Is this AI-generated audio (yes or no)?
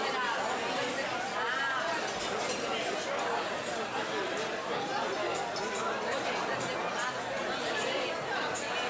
no